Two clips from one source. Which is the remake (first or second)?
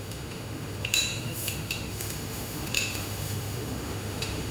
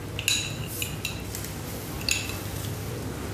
first